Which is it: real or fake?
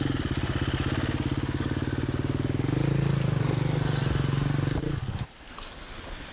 real